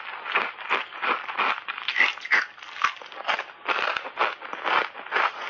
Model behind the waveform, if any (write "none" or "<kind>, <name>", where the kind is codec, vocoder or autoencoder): none